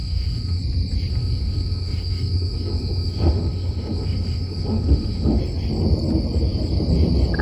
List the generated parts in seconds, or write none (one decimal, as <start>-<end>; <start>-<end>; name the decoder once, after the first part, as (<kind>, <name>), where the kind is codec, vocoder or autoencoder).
0.0-0.6 (autoencoder, DAC-VAE); 1.1-5.4